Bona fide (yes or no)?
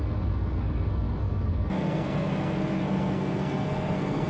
no